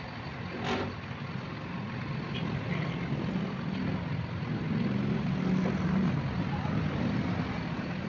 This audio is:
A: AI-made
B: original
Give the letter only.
B